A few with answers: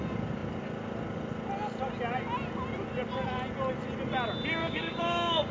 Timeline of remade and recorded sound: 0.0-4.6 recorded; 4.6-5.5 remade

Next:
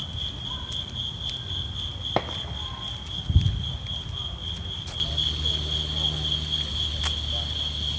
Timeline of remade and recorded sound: 0.0-8.0 recorded

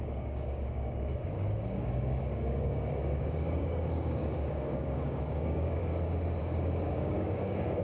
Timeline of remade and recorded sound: 0.0-5.8 remade; 5.8-6.4 recorded; 6.4-7.8 remade

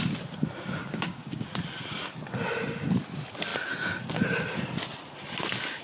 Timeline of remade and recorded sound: 0.0-0.8 recorded; 0.8-1.5 remade; 1.5-5.8 recorded

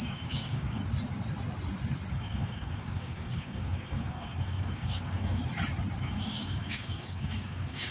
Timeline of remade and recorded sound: 0.0-0.8 remade; 0.8-2.1 recorded; 2.1-5.4 remade; 5.4-6.0 recorded; 6.0-7.9 remade

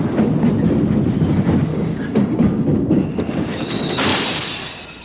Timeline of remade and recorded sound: 0.0-1.7 recorded; 1.7-3.3 remade; 3.3-5.0 recorded

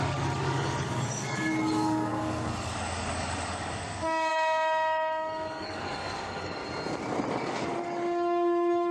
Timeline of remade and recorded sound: 0.0-6.6 remade; 6.6-7.3 recorded; 7.3-8.9 remade